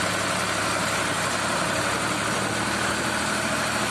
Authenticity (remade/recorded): recorded